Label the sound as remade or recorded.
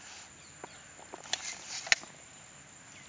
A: recorded